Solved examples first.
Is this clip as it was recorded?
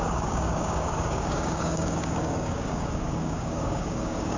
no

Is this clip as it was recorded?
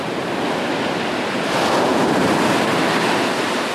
yes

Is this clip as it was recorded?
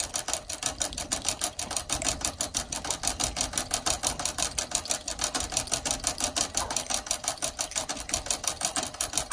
yes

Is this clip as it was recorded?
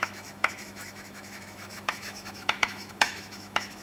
no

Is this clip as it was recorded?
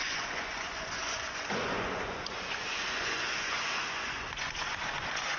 no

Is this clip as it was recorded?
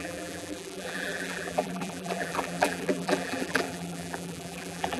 no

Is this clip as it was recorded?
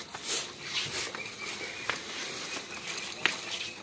yes